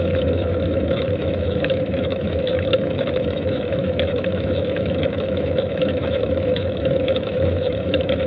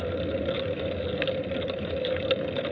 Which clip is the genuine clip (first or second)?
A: second